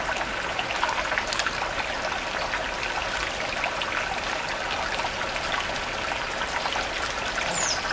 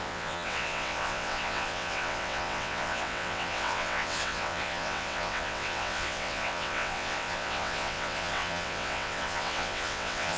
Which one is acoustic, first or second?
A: first